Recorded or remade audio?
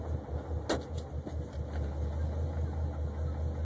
recorded